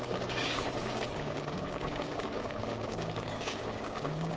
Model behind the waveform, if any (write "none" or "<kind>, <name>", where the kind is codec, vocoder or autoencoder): codec, DAC